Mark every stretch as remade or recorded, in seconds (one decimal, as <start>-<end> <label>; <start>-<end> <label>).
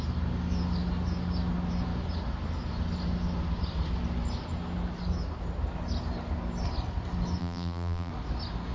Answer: 0.0-7.4 recorded; 7.4-8.1 remade; 8.1-8.7 recorded